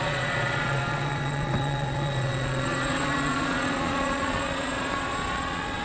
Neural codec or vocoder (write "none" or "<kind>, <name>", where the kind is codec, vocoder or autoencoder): vocoder, Vocos